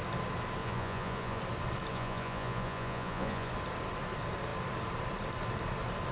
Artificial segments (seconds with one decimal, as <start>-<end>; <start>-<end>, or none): 0.6-1.4; 1.9-3.5